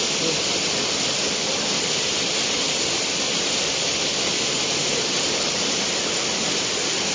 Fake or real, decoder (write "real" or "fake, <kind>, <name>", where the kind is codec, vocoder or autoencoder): real